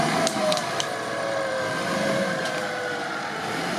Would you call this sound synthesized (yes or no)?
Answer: yes